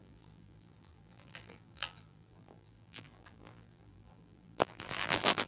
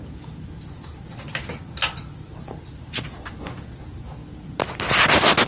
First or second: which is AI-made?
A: first